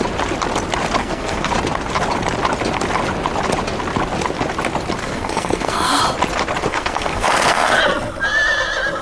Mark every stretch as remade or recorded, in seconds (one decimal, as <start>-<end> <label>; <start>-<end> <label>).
0.0-1.0 recorded; 1.0-1.5 remade; 1.5-5.0 recorded; 5.0-6.0 remade; 6.0-6.7 recorded; 6.7-7.8 remade; 7.8-9.0 recorded